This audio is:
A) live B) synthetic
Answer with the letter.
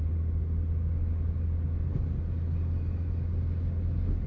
A